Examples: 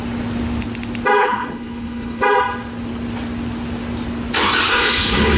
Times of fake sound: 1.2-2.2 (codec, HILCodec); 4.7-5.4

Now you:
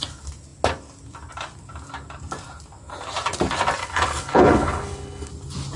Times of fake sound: 3.8-5.3 (codec, HILCodec)

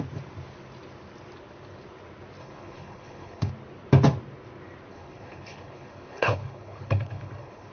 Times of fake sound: 2.4-3.5 (codec, HILCodec); 4.9-7.7

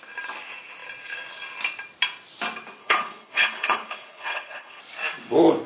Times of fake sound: 2.8-4.8 (codec, HILCodec)

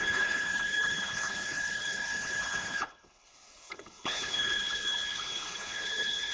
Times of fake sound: 0.0-6.3 (codec, HILCodec)